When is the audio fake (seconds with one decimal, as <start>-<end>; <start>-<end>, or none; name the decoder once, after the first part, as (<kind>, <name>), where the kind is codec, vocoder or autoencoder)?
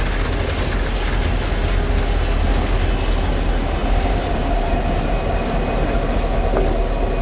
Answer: 3.8-4.8 (vocoder, BigVGAN v2)